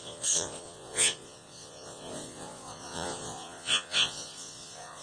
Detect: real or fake fake